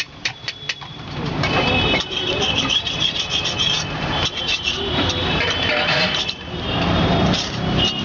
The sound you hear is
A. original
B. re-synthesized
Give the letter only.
B